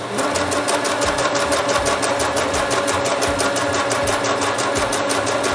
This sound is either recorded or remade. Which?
recorded